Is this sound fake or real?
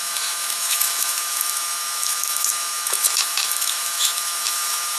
fake